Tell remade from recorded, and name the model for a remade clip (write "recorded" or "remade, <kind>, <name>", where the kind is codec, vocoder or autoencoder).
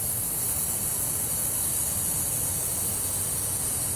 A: recorded